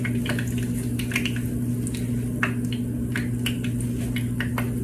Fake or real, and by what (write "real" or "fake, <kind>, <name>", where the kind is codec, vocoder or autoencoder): real